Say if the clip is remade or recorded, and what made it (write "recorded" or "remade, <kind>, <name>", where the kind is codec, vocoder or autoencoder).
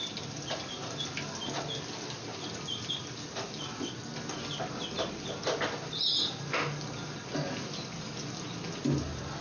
recorded